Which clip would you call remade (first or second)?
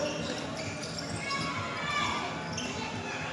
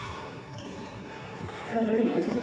second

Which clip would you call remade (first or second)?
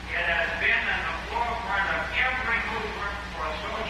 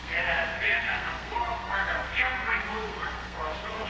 second